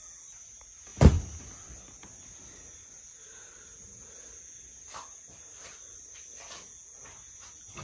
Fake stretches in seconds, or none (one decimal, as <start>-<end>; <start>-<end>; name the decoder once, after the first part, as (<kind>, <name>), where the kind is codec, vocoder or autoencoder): none